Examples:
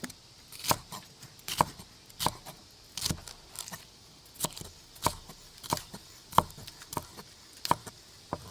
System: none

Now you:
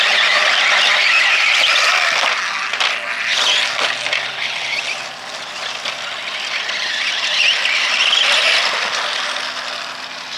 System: none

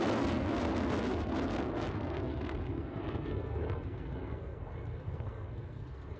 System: codec, SNAC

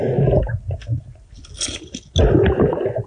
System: none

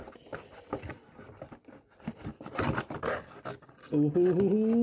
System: none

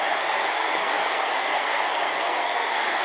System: codec, SNAC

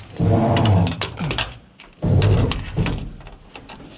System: none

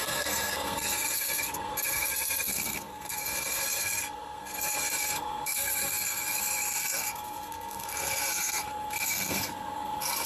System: codec, SNAC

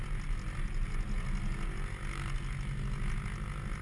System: none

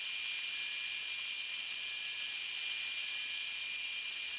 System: none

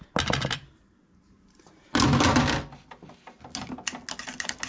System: none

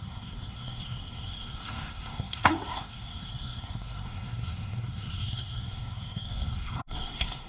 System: codec, SNAC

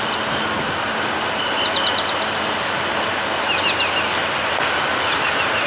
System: none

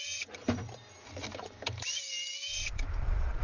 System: none